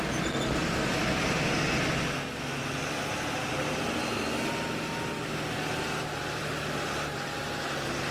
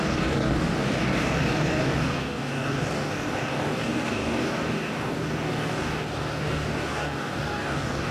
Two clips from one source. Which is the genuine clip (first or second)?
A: first